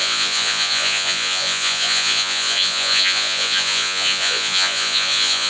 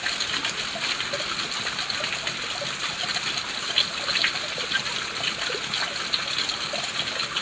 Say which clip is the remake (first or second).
first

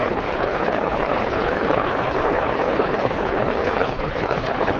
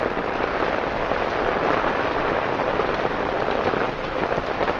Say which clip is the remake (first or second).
first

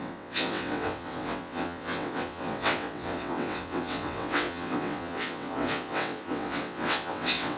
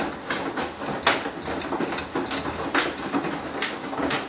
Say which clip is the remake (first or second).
first